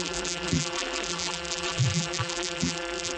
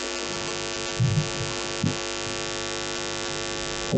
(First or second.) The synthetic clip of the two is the first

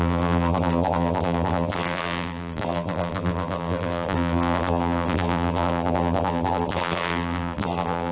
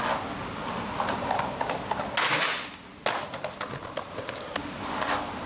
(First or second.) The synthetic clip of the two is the first